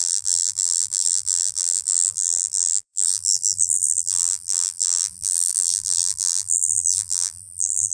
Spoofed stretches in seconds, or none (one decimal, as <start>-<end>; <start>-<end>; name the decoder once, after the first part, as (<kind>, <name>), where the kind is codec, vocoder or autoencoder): 0.0-7.9 (vocoder, BigVGAN v2)